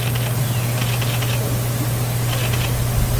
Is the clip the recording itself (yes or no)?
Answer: yes